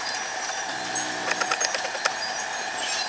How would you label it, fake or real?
real